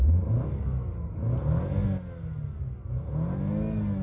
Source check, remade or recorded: recorded